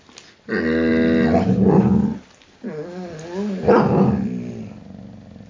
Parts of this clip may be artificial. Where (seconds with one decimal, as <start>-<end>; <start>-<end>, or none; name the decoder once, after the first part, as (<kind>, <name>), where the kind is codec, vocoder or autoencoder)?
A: none